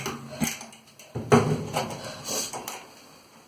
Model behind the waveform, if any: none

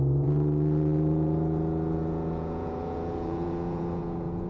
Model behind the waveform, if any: vocoder, Vocos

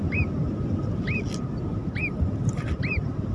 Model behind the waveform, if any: none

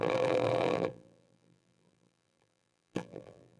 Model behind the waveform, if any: vocoder, BigVGAN v2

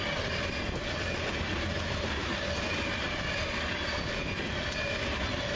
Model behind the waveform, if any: none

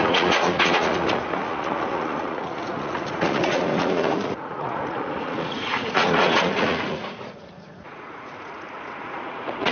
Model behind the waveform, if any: vocoder, Vocos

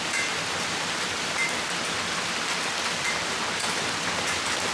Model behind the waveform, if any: vocoder, BigVGAN v2